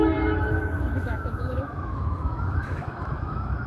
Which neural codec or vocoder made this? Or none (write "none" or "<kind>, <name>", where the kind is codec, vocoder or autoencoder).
autoencoder, DAC-VAE